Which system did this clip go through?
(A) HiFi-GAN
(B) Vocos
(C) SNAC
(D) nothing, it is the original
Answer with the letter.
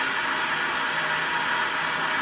D